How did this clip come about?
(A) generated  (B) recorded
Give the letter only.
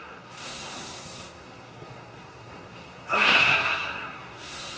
A